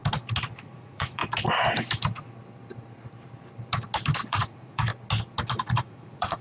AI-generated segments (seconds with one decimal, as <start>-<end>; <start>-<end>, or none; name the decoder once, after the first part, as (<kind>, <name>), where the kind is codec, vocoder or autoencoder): 0.6-1.2 (vocoder, Vocos); 4.3-4.9; 5.5-6.4